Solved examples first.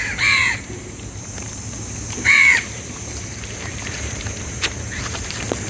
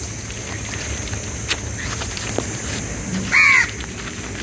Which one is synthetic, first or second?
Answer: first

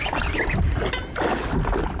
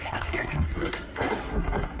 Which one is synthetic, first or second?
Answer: second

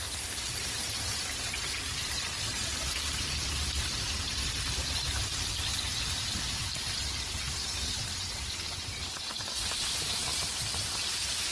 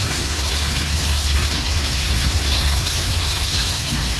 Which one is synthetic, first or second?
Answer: second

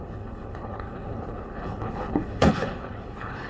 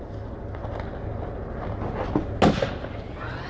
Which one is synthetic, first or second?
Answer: first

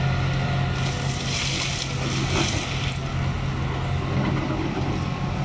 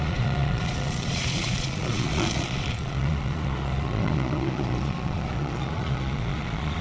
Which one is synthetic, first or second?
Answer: second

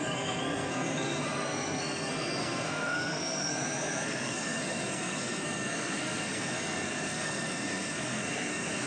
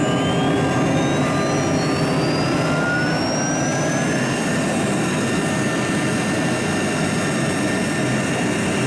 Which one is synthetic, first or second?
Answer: first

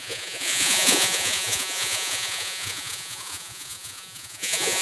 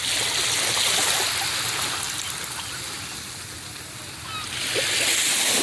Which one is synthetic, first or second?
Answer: first